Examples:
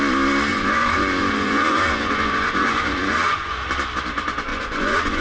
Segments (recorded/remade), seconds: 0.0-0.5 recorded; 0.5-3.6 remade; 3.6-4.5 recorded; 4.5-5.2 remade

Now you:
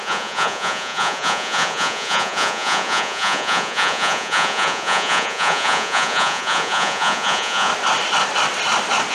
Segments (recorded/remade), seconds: 0.0-7.7 remade; 7.7-9.1 recorded

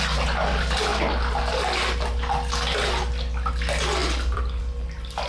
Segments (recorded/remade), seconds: 0.0-5.3 recorded

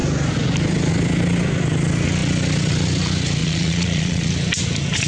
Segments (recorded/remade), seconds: 0.0-3.4 recorded; 3.4-4.3 remade; 4.3-5.1 recorded

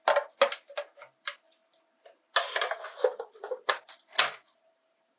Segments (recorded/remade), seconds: 0.0-5.2 recorded